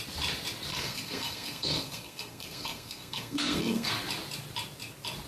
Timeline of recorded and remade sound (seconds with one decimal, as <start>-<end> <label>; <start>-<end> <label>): 0.0-0.7 recorded; 0.7-3.9 remade; 3.9-5.3 recorded